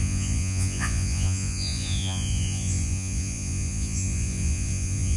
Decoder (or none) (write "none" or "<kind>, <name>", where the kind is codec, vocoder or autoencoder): vocoder, Vocos